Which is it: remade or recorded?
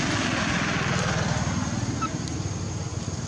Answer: recorded